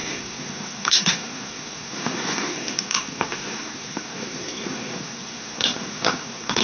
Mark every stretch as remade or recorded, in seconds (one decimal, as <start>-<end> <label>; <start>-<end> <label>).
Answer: 0.0-6.6 remade